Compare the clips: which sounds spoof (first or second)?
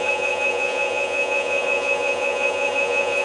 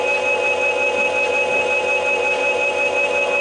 first